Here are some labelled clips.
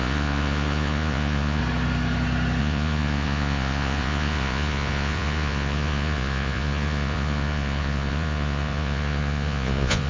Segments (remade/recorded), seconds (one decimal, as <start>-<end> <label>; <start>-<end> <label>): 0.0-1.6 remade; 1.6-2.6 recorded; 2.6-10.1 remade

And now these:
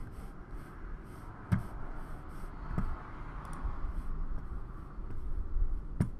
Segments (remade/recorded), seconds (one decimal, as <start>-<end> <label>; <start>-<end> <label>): 0.0-6.2 recorded

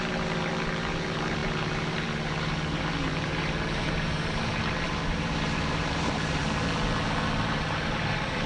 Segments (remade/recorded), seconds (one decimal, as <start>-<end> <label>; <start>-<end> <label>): 0.0-6.4 remade; 6.4-7.4 recorded; 7.4-8.5 remade

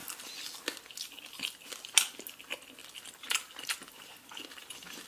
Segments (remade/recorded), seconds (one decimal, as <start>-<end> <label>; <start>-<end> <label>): 0.0-5.1 recorded